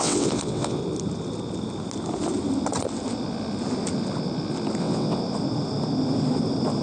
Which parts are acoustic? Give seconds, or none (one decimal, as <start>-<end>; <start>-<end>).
0.8-4.8; 5.2-6.8